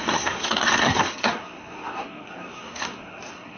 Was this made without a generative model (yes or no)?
no